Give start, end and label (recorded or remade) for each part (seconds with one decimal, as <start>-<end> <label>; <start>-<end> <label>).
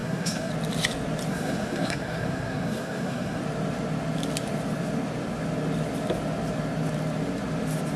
0.0-0.5 remade; 0.5-1.3 recorded; 1.3-3.4 remade; 3.4-8.0 recorded